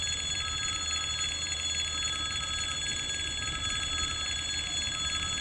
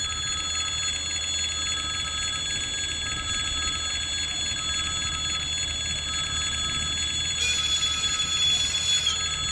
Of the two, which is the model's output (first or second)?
first